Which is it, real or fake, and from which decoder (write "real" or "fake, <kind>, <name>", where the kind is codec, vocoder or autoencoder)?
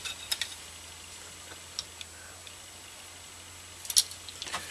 real